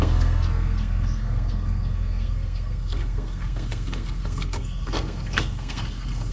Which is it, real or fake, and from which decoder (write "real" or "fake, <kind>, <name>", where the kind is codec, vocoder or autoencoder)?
fake, codec, SNAC